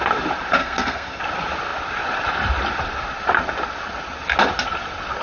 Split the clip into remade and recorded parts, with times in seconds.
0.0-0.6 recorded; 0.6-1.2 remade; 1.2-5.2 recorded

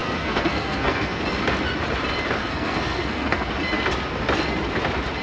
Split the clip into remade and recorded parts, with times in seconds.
0.0-1.2 remade; 1.2-2.4 recorded; 2.4-3.5 remade; 3.5-5.2 recorded

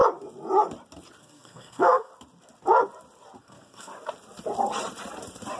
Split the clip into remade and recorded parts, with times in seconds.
0.0-1.2 recorded; 1.2-2.1 remade; 2.1-3.4 recorded; 3.4-3.9 remade; 3.9-5.6 recorded